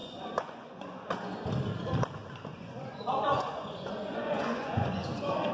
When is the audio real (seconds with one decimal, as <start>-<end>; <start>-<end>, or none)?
1.5-2.5